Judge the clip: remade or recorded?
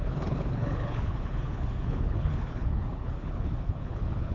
remade